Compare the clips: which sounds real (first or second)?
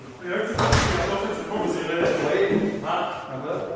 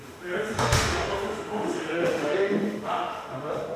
first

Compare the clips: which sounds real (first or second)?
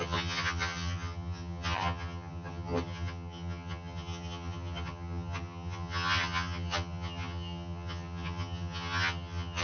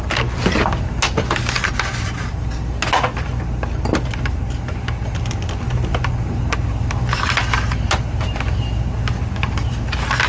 second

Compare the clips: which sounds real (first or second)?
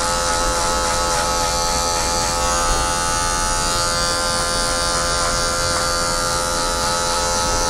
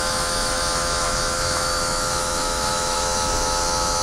first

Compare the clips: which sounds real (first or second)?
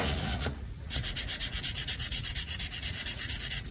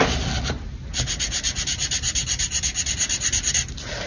second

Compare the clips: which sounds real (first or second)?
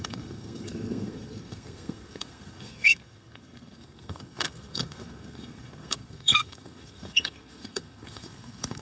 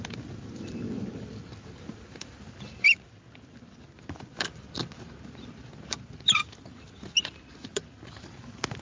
second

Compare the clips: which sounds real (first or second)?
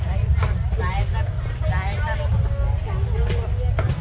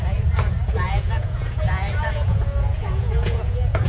first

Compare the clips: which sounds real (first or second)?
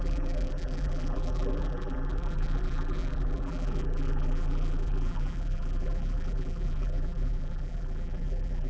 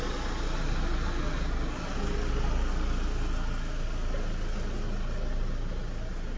second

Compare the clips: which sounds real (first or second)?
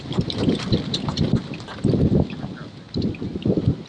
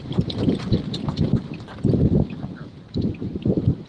first